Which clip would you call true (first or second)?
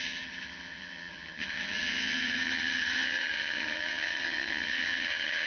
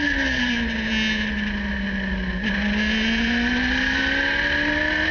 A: second